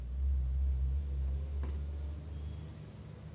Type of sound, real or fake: real